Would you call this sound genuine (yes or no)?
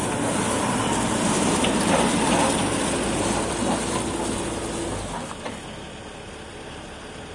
yes